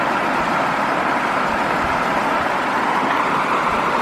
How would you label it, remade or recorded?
remade